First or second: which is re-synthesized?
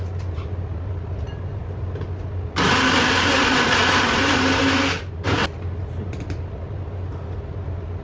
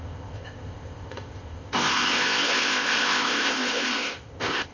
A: second